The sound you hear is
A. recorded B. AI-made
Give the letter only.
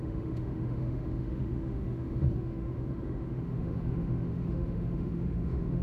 B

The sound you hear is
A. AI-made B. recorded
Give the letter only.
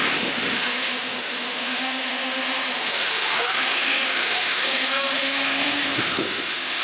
A